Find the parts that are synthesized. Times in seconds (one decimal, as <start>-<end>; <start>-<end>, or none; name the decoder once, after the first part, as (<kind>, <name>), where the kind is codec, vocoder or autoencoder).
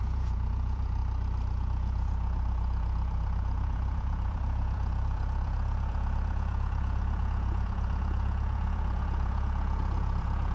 0.0-1.0 (vocoder, Vocos); 1.5-10.5